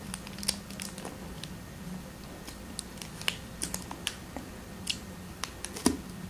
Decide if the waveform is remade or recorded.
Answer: recorded